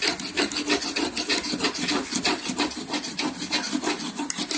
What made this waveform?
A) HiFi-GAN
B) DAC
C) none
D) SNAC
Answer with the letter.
C